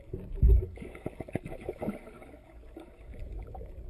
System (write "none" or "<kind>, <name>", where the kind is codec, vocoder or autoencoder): codec, DAC